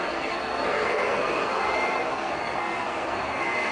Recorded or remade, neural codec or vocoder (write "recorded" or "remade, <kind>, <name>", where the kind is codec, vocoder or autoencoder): remade, codec, SNAC